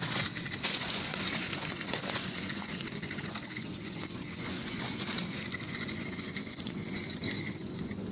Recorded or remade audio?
remade